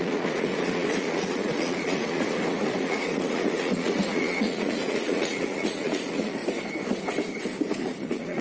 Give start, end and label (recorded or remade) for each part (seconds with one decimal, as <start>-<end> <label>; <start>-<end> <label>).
0.0-6.4 remade; 6.4-7.8 recorded; 7.8-8.4 remade

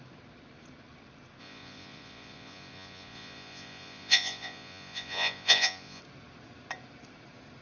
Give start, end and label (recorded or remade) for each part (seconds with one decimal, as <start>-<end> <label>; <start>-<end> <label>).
0.0-1.4 recorded; 1.4-6.0 remade; 6.0-7.6 recorded

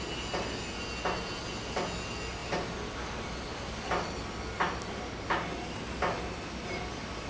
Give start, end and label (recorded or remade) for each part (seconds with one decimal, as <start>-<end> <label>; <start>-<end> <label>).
0.0-7.3 recorded

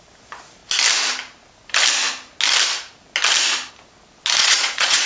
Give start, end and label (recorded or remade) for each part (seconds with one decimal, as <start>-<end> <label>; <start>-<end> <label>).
0.0-4.4 recorded; 4.4-5.1 remade

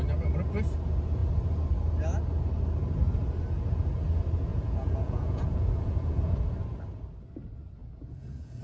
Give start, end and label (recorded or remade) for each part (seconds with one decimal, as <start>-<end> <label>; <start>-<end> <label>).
0.0-4.5 recorded; 4.5-6.4 remade; 6.4-7.8 recorded; 7.8-8.6 remade